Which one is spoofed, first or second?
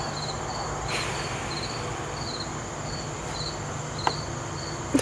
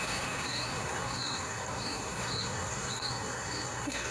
second